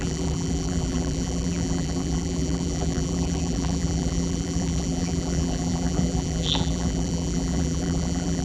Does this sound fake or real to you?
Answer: fake